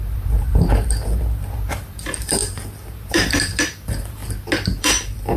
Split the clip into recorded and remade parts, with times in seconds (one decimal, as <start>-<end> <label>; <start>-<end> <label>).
0.0-4.2 remade; 4.2-4.8 recorded; 4.8-5.4 remade